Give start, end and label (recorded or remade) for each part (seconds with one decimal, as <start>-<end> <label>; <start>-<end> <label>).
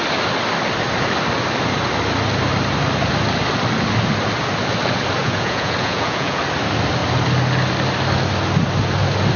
0.0-5.2 recorded; 5.2-6.4 remade; 6.4-9.4 recorded